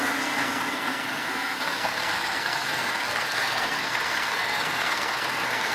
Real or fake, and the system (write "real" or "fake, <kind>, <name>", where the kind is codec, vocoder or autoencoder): fake, codec, SNAC